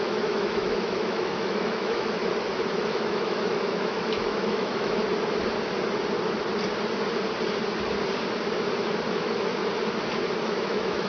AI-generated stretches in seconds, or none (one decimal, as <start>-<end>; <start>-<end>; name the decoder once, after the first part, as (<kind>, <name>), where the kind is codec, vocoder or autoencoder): 0.0-2.2 (autoencoder, DAC-VAE); 2.9-5.0; 9.1-9.6; 10.4-11.1